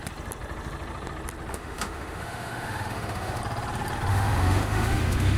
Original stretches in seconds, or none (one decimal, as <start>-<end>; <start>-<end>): 0.0-1.5; 3.4-4.1